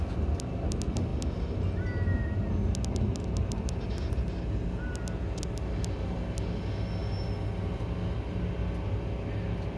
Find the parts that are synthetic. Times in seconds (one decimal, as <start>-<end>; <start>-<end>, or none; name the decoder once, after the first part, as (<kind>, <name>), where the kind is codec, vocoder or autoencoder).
none